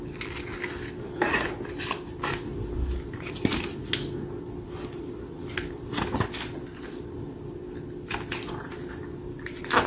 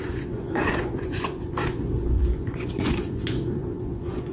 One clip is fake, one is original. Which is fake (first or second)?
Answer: second